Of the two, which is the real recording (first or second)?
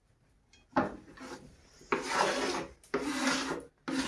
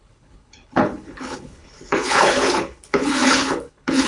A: first